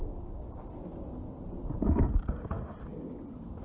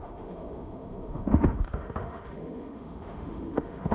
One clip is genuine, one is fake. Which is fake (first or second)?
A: second